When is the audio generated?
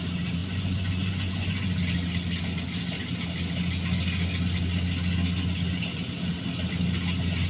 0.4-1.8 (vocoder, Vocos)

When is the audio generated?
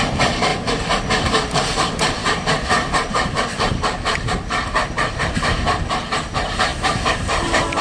0.0-0.5 (vocoder, BigVGAN v2); 1.0-7.8